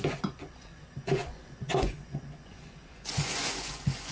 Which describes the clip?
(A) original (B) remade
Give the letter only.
B